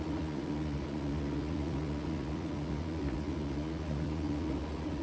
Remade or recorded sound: remade